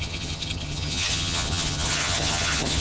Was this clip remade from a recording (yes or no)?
yes